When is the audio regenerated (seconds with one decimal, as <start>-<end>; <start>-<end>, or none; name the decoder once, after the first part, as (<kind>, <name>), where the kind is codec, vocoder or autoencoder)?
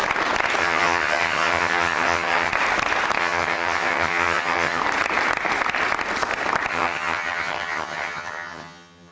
0.6-2.5 (vocoder, HiFi-GAN); 3.2-4.8; 6.7-9.1